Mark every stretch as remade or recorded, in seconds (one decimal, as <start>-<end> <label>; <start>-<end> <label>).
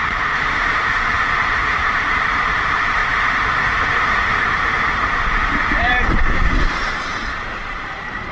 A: 0.0-3.0 remade; 3.0-3.8 recorded; 3.8-8.3 remade